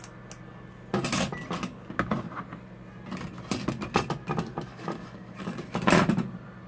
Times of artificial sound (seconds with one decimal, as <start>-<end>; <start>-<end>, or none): 4.7-5.4